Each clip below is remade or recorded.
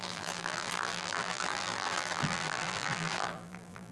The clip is remade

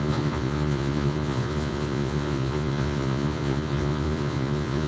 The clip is remade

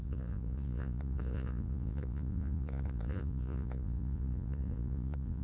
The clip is remade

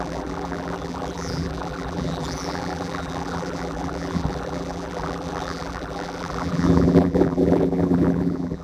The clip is remade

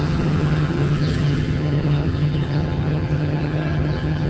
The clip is remade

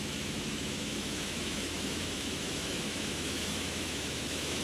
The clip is remade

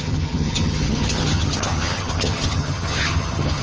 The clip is remade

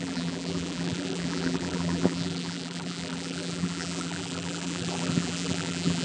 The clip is remade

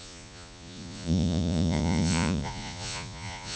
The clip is remade